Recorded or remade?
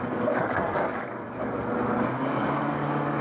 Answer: remade